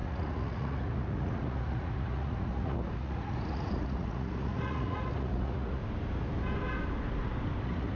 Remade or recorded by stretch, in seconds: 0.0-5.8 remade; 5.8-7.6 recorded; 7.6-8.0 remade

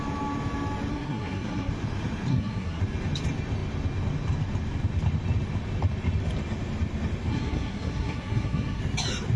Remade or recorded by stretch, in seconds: 0.0-0.9 recorded; 0.9-1.7 remade; 1.7-2.3 recorded; 2.3-2.8 remade; 2.8-7.3 recorded; 7.3-8.8 remade; 8.8-9.4 recorded